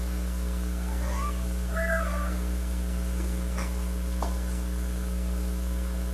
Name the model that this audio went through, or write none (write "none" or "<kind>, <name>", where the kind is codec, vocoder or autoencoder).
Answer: codec, SNAC